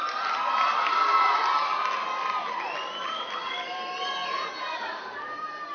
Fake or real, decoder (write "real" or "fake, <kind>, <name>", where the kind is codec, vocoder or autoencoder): real